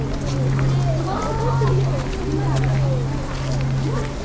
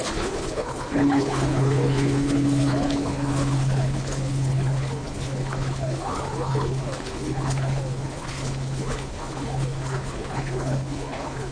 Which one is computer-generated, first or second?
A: second